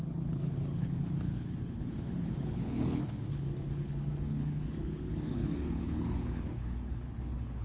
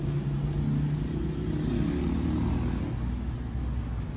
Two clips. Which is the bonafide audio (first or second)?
second